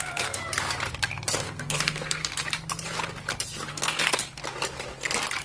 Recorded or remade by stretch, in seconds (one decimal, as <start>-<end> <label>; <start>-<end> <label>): 0.0-0.4 remade; 0.4-1.4 recorded; 1.4-2.2 remade; 2.2-3.7 recorded; 3.7-4.4 remade; 4.4-5.4 recorded